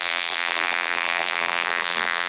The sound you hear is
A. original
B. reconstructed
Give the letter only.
B